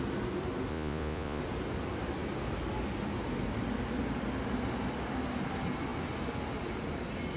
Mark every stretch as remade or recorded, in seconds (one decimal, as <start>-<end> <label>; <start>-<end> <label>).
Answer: 0.0-0.7 recorded; 0.7-1.4 remade; 1.4-7.4 recorded